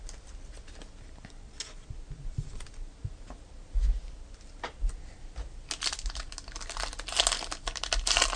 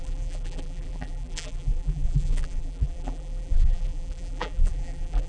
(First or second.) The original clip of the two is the first